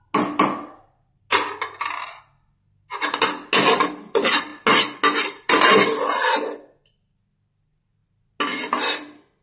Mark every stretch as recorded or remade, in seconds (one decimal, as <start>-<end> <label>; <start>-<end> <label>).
0.0-9.4 recorded

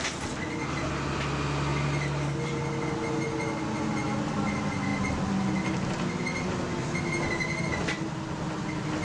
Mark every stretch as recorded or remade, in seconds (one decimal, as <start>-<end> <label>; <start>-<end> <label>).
0.0-9.0 recorded

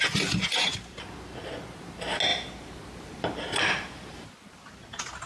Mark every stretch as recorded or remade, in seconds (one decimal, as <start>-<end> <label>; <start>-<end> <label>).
0.0-2.3 recorded; 2.3-4.3 remade; 4.3-5.3 recorded

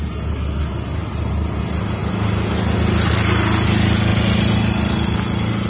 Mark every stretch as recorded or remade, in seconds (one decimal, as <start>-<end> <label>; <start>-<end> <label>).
0.0-5.7 recorded

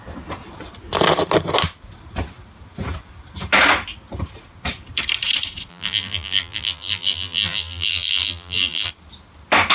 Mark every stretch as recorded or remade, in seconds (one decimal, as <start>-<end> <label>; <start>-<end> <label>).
0.0-5.7 recorded; 5.7-8.9 remade; 8.9-9.7 recorded

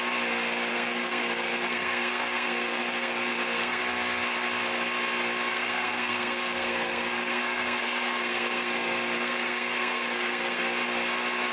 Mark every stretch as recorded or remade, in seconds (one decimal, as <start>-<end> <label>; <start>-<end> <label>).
0.0-0.7 recorded; 0.7-3.8 remade; 3.8-5.5 recorded; 5.5-10.6 remade; 10.6-11.5 recorded

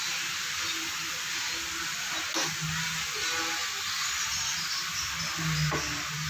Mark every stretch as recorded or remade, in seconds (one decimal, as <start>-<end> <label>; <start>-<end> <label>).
0.0-6.3 recorded

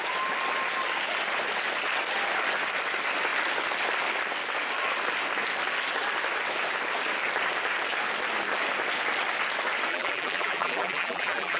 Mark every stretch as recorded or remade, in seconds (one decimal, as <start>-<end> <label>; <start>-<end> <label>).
0.0-9.9 recorded; 9.9-11.6 remade